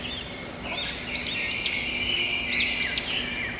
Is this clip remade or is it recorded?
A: recorded